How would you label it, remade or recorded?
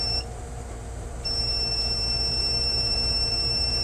remade